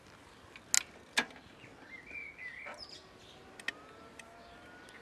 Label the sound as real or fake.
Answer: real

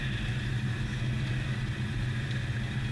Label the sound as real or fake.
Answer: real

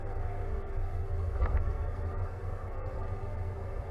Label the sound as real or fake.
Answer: fake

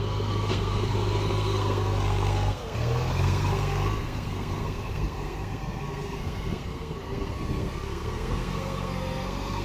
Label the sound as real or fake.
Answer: fake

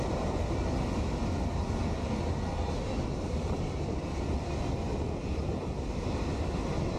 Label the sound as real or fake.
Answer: real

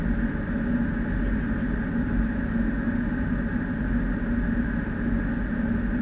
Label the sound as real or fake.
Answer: real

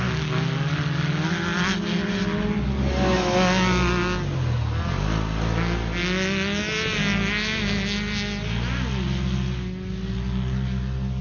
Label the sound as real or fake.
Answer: real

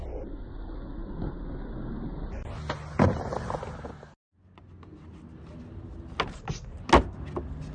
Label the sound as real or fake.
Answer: real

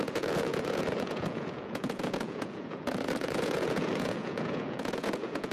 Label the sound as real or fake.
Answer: fake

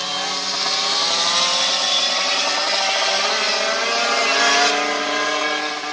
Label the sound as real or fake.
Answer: real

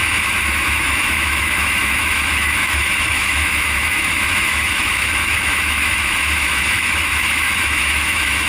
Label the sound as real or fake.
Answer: fake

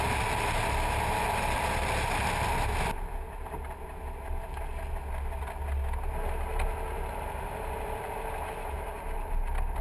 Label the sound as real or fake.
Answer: real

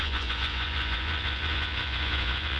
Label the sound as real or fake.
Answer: fake